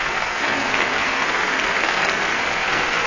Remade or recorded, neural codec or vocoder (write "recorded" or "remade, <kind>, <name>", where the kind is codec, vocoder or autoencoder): remade, codec, SNAC